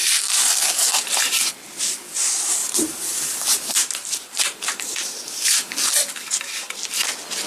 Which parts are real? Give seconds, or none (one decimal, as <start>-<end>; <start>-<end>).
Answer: 1.8-2.6; 5.7-7.5